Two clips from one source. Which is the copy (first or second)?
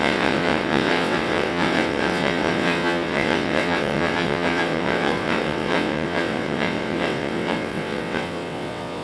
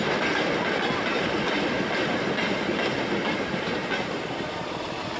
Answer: first